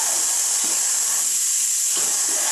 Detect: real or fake fake